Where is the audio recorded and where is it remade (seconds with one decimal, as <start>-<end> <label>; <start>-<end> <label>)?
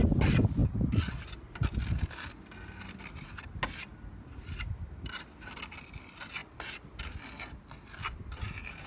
0.0-8.9 recorded